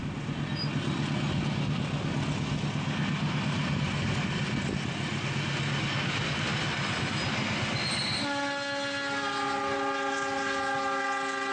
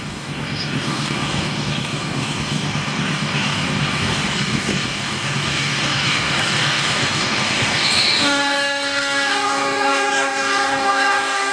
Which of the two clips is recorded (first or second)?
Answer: first